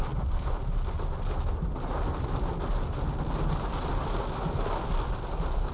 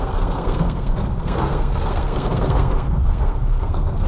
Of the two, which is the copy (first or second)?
second